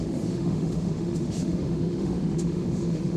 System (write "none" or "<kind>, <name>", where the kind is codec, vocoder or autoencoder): autoencoder, DAC-VAE